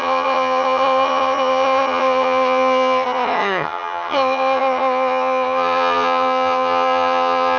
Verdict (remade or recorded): remade